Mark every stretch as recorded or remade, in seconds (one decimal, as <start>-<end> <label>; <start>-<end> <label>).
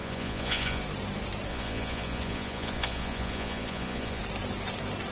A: 0.0-0.8 remade; 0.8-1.5 recorded; 1.5-4.2 remade; 4.2-5.1 recorded